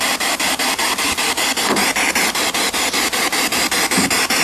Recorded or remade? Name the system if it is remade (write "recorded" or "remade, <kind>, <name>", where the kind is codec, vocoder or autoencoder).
recorded